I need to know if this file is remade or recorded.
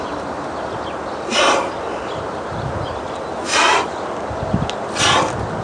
recorded